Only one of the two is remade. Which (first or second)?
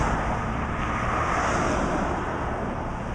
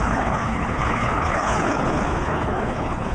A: second